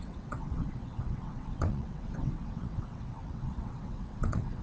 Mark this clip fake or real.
fake